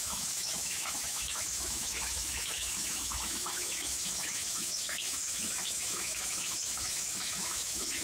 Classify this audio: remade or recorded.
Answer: remade